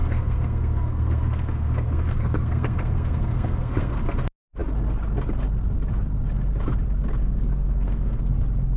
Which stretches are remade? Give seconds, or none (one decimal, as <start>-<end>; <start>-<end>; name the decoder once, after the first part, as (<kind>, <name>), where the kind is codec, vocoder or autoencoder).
0.0-4.0 (codec, SNAC); 7.2-8.3